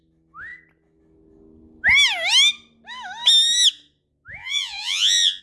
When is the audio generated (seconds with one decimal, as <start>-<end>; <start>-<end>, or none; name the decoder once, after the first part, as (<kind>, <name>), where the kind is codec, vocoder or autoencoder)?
4.4-5.4 (vocoder, Vocos)